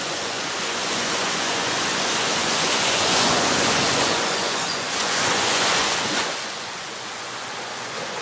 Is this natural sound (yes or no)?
no